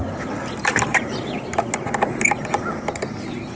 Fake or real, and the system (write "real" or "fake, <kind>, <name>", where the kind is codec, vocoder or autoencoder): real